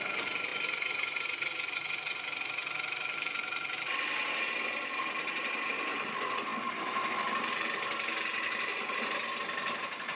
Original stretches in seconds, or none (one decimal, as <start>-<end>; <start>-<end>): 0.0-10.1